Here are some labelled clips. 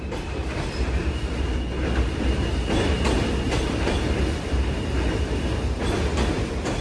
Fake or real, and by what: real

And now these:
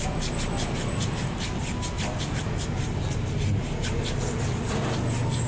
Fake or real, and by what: real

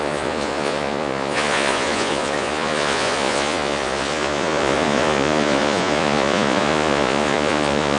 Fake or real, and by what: fake, vocoder, Vocos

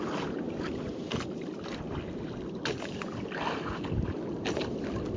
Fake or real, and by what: real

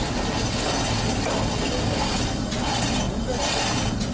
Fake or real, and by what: real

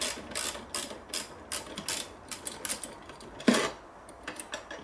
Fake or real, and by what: real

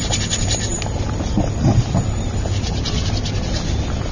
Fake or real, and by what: real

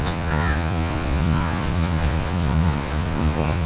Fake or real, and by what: fake, vocoder, Vocos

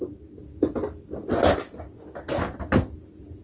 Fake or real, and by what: real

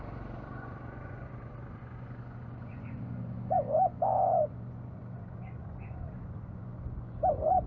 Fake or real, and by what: fake, vocoder, Vocos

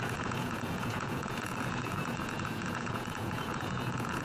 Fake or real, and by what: fake, vocoder, Vocos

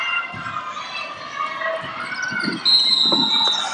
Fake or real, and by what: real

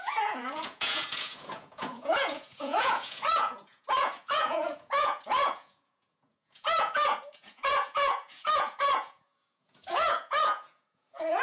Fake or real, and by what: fake, vocoder, Vocos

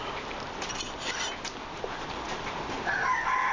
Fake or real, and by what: real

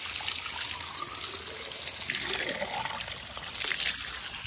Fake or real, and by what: real